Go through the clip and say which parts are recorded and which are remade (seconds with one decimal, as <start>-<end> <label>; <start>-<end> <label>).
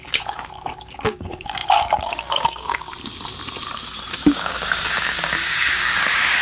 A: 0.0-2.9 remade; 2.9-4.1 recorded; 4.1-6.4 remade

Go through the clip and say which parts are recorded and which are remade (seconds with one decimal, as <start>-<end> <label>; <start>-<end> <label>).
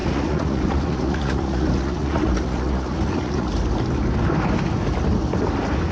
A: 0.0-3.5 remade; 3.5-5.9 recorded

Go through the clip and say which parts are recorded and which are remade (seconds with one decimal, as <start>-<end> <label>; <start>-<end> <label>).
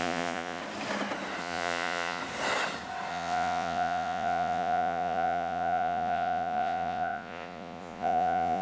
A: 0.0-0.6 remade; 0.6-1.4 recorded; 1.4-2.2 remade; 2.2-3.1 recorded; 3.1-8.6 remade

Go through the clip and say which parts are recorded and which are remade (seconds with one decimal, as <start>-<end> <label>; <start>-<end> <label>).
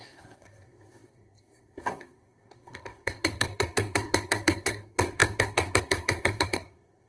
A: 0.0-7.1 remade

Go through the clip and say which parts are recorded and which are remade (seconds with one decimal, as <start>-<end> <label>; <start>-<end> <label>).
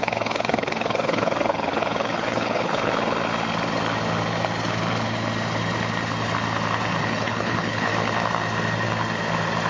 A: 0.0-2.9 remade; 2.9-7.0 recorded; 7.0-7.9 remade; 7.9-9.7 recorded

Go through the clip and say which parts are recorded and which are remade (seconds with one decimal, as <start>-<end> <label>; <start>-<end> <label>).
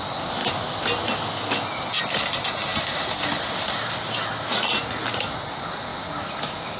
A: 0.0-6.8 recorded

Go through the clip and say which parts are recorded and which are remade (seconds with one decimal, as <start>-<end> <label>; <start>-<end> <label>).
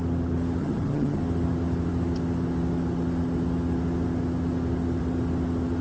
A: 0.0-0.6 recorded; 0.6-1.2 remade; 1.2-5.8 recorded